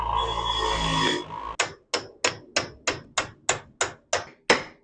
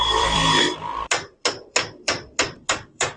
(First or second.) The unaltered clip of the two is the first